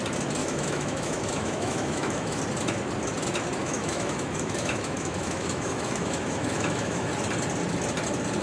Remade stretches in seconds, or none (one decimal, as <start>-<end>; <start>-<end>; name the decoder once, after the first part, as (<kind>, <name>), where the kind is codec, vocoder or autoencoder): 0.4-2.4 (autoencoder, DAC-VAE); 3.6-7.1